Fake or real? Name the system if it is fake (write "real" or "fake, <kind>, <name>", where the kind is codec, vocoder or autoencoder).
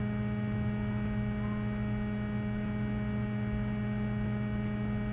real